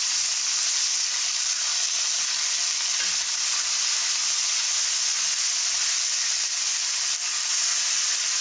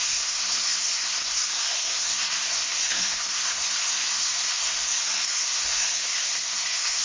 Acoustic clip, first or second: first